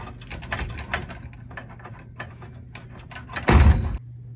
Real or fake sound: real